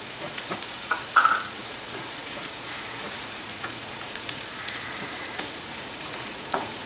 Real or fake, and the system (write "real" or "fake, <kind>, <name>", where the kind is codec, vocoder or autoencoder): fake, vocoder, Vocos